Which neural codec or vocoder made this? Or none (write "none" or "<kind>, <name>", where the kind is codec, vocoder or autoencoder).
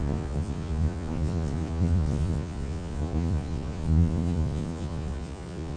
vocoder, Vocos